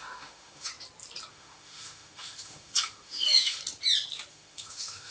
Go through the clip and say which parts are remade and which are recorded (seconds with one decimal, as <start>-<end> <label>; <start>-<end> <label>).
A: 0.0-0.7 remade; 0.7-1.3 recorded; 1.3-3.6 remade; 3.6-4.3 recorded; 4.3-5.1 remade